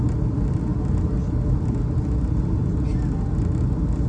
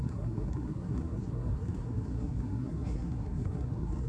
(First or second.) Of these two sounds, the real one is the first